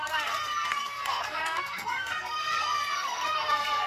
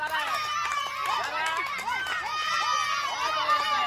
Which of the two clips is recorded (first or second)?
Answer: second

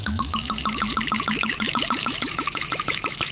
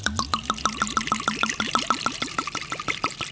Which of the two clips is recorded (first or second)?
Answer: second